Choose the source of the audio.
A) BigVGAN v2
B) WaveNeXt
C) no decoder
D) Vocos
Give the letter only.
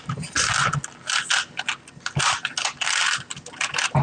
C